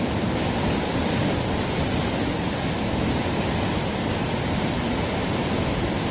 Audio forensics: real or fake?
real